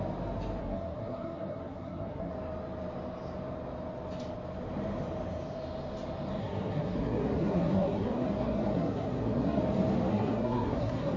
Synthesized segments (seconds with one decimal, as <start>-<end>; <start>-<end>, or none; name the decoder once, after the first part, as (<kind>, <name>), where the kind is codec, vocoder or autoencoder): 0.6-2.3 (codec, SNAC); 6.4-9.6; 10.1-11.2